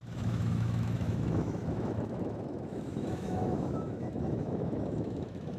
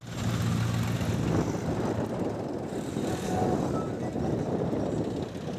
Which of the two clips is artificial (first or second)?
first